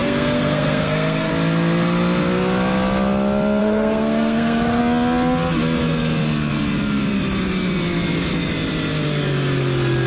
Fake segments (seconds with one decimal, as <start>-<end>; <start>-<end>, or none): 0.0-1.3; 3.6-4.8

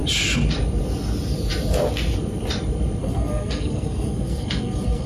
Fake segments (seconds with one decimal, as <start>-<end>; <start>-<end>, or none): 3.0-5.1

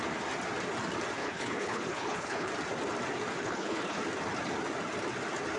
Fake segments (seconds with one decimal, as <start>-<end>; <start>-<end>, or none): 1.2-2.5; 3.4-4.0

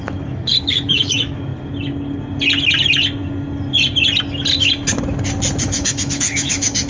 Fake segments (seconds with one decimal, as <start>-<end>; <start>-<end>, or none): 0.0-1.5; 5.6-6.9